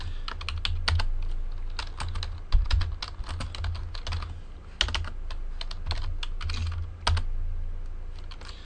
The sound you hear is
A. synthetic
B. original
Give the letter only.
B